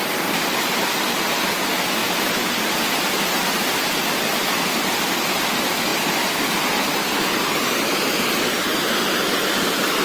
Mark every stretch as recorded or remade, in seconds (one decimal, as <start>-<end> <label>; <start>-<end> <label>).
0.0-10.0 recorded